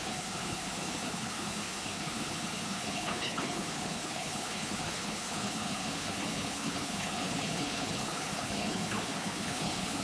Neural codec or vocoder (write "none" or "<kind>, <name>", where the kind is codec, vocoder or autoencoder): codec, HILCodec